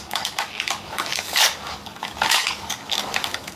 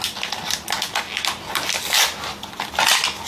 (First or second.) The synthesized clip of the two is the first